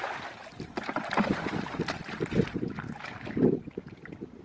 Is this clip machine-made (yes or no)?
no